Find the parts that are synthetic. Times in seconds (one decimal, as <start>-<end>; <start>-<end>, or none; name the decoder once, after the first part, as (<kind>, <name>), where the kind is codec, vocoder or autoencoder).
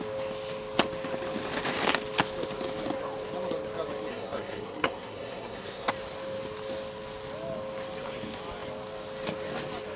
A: 4.1-5.9 (codec, SNAC)